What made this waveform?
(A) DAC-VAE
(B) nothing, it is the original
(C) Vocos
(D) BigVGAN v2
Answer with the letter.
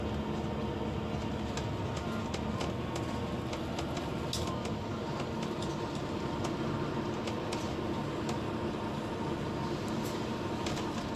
B